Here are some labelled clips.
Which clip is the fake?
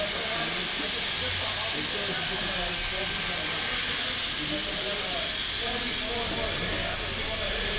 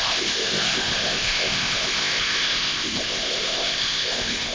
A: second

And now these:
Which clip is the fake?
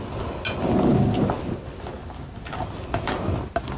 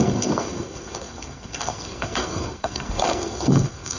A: second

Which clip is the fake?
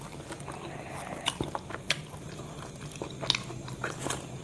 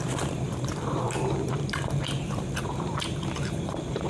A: second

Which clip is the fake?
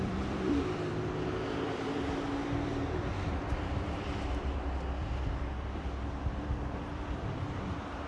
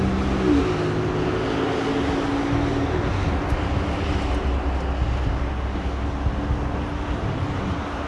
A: first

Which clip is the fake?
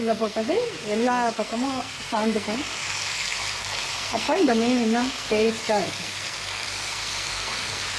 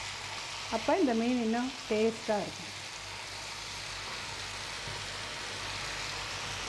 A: first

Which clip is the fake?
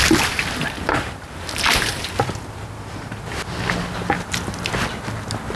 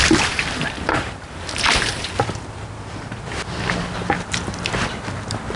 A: second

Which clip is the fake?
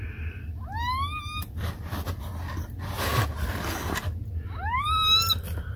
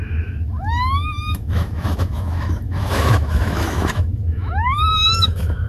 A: second